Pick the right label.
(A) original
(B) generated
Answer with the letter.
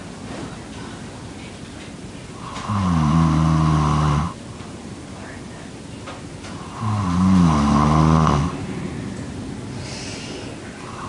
A